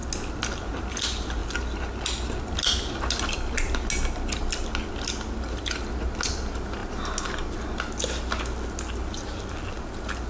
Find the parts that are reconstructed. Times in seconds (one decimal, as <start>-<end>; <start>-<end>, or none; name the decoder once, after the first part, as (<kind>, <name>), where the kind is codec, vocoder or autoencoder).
none

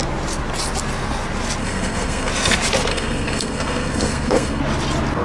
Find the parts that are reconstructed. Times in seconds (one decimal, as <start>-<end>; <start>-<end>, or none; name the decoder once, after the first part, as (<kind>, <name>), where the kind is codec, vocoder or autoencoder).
1.6-2.3 (codec, SNAC); 2.9-4.6

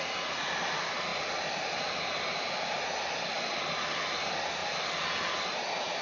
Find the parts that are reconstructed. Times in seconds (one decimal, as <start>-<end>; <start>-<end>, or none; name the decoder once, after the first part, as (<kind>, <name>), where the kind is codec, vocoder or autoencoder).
none